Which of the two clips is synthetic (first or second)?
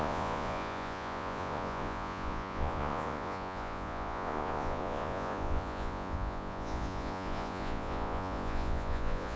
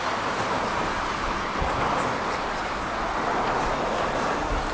first